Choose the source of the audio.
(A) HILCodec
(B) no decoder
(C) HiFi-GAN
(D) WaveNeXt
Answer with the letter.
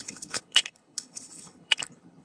A